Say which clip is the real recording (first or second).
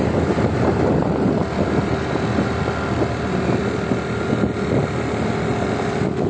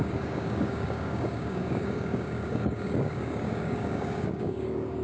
first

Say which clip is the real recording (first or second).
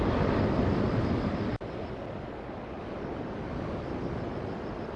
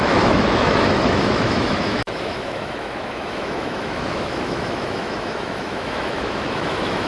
first